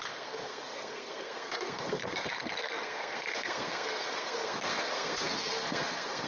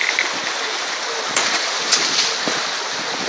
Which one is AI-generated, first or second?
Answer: first